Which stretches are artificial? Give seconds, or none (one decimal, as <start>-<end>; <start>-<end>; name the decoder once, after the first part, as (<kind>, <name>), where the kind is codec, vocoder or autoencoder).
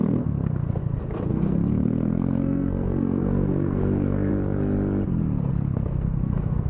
0.0-0.8 (codec, SNAC); 1.3-4.3; 5.5-6.7